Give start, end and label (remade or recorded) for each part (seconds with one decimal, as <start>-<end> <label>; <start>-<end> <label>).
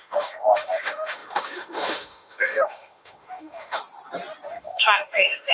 0.0-3.8 remade; 3.8-4.5 recorded; 4.5-5.5 remade